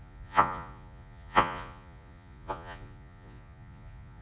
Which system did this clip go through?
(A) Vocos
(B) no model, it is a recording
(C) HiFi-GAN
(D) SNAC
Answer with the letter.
A